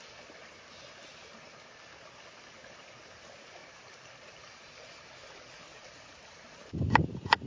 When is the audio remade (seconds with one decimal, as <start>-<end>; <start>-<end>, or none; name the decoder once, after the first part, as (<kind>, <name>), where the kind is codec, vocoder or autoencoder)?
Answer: 1.1-1.8 (vocoder, BigVGAN v2); 3.6-5.1; 5.7-6.7